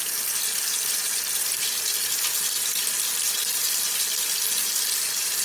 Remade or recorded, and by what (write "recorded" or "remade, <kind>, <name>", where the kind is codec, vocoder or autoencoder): remade, vocoder, BigVGAN v2